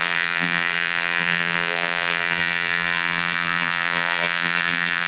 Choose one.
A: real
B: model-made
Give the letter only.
B